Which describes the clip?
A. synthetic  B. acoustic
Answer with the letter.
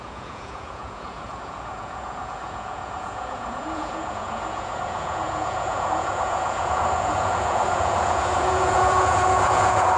A